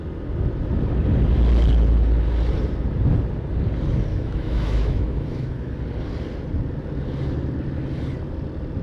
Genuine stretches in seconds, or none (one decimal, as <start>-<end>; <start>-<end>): 0.0-4.1; 5.7-8.8